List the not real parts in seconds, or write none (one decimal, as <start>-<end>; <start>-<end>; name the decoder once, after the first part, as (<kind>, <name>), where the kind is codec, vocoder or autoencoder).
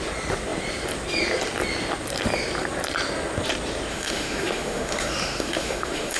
3.9-6.2 (autoencoder, DAC-VAE)